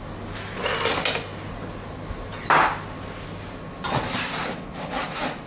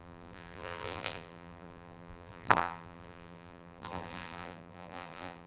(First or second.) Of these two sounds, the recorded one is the first